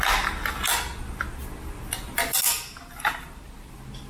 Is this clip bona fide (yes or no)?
yes